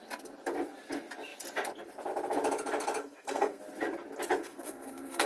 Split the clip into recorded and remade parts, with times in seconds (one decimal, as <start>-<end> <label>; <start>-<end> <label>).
0.0-3.0 recorded; 3.0-3.6 remade; 3.6-4.4 recorded; 4.4-5.3 remade